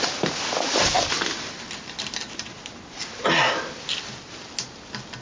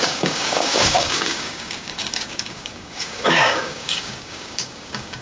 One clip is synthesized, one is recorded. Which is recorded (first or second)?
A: first